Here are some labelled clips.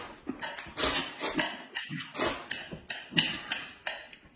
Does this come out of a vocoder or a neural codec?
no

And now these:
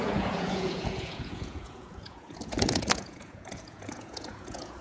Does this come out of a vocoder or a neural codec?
yes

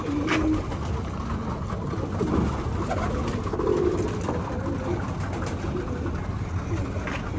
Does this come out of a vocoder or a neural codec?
no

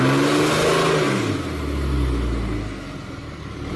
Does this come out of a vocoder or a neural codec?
no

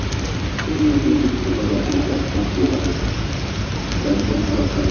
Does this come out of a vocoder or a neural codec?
no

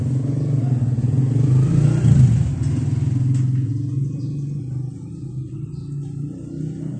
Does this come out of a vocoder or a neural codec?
no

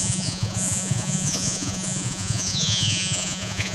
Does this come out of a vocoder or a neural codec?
yes